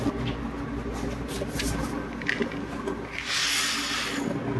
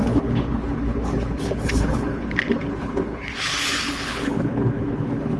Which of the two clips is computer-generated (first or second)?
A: second